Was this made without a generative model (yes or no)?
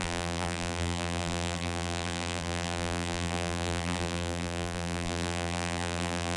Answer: no